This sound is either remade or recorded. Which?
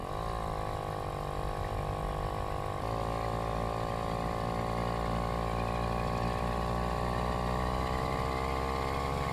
recorded